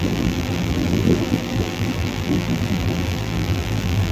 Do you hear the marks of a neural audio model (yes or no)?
yes